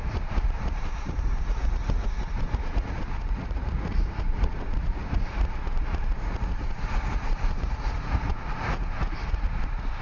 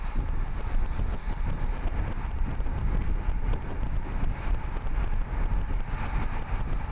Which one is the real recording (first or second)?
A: second